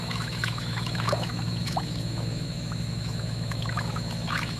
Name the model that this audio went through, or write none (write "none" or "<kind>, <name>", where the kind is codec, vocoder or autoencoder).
autoencoder, DAC-VAE